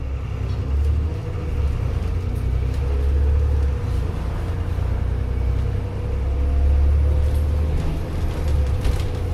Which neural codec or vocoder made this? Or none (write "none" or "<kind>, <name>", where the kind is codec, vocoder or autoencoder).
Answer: none